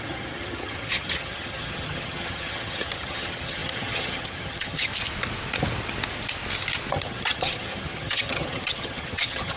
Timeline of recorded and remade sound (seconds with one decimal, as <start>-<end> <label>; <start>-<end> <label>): 0.0-4.9 remade; 4.9-6.9 recorded; 6.9-9.6 remade